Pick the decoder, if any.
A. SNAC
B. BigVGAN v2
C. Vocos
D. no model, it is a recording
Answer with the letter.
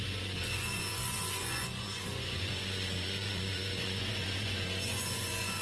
C